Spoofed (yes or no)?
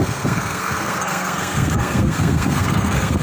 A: yes